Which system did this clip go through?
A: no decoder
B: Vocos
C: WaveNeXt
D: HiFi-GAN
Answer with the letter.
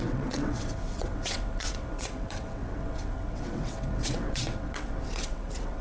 C